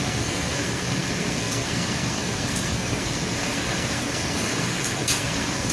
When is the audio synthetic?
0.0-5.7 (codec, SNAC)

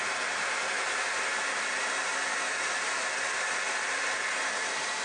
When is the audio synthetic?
none

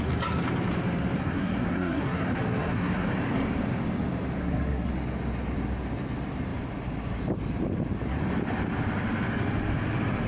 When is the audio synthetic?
1.2-3.1 (codec, SNAC); 4.4-4.9

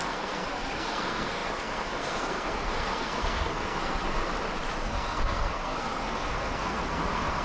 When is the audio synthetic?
0.0-4.3 (codec, SNAC); 4.8-7.4

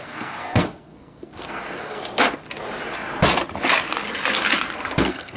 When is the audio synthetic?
0.0-2.0 (codec, SNAC); 4.8-5.4

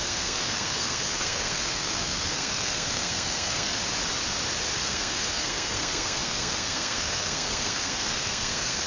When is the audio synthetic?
0.0-3.8 (codec, SNAC); 4.8-8.9